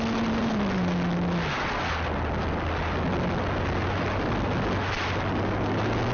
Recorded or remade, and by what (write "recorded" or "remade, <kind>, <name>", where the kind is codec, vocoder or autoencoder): recorded